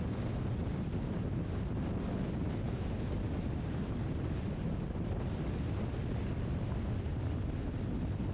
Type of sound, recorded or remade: recorded